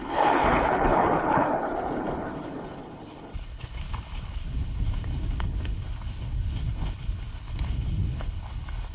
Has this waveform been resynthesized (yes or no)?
yes